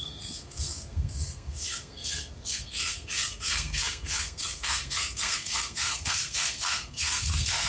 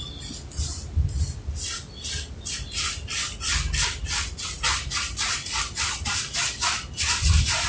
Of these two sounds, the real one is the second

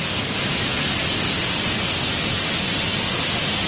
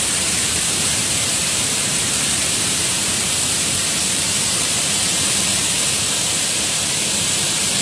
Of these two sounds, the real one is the first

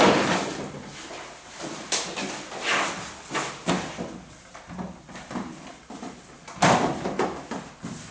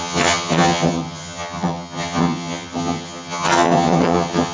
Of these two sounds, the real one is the first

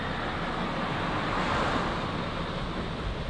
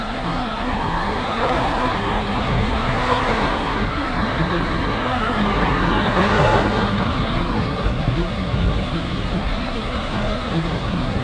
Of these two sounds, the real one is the first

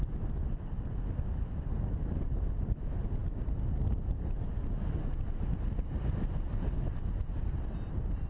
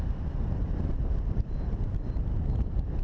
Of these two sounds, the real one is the first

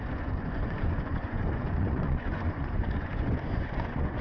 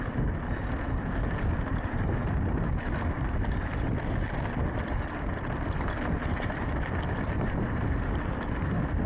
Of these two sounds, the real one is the second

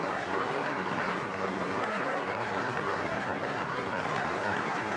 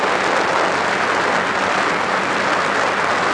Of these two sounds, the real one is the second